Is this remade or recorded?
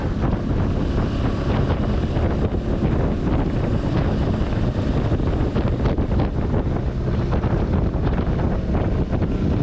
recorded